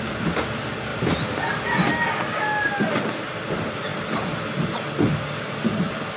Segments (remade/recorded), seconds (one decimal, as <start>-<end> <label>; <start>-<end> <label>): 0.0-6.2 recorded